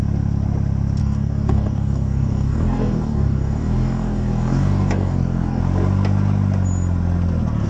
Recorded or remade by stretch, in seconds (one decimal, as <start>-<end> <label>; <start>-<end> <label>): 0.0-1.0 recorded; 1.0-5.6 remade; 5.6-7.7 recorded